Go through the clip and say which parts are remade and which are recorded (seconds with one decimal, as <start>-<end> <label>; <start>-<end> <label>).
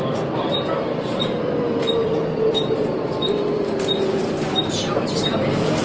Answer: 0.0-5.8 remade